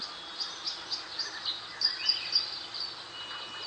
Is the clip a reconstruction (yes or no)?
no